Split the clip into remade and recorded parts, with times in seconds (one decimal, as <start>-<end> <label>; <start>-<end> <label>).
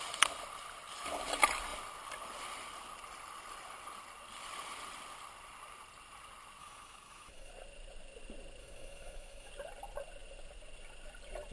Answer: 0.0-6.6 recorded; 6.6-7.5 remade; 7.5-8.6 recorded; 8.6-9.5 remade; 9.5-11.5 recorded